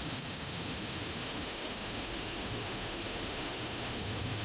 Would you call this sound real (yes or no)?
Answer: no